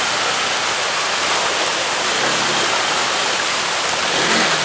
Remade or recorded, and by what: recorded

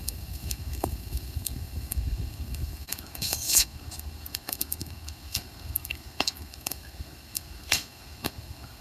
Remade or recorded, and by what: remade, codec, SNAC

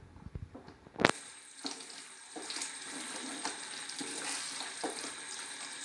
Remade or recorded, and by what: recorded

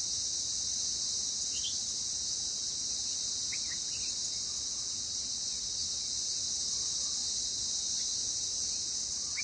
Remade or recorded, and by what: recorded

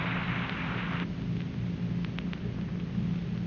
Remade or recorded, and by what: recorded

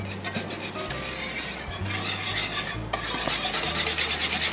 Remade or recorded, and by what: recorded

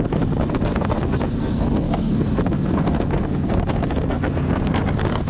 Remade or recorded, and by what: remade, codec, SNAC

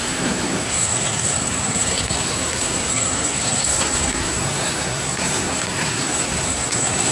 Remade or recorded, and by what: remade, codec, SNAC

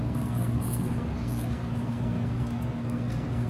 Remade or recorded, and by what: remade, codec, SNAC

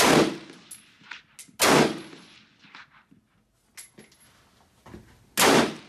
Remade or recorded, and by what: recorded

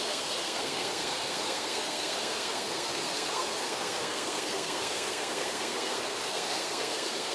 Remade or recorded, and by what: remade, codec, SNAC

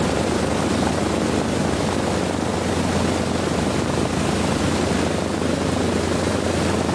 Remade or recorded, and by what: recorded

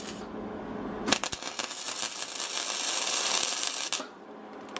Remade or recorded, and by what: recorded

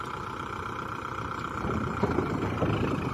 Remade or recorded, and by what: recorded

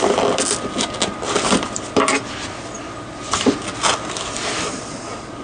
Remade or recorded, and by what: recorded